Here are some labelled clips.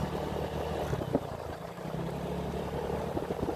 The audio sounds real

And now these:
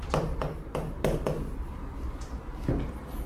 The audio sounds real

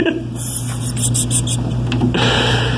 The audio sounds real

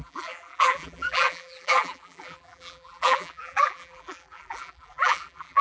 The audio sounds fake